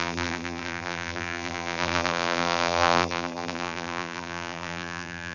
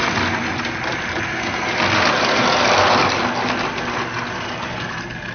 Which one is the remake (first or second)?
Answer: first